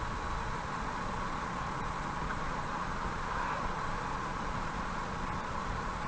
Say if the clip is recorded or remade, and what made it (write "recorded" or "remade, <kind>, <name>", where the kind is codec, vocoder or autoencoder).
remade, vocoder, Vocos